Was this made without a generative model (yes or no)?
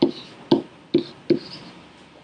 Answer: yes